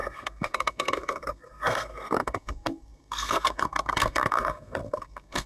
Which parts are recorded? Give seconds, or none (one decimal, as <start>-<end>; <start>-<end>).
none